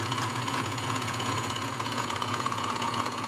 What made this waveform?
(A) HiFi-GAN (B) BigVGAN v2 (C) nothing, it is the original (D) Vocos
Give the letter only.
D